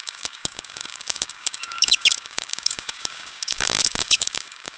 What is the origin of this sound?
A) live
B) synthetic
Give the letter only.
B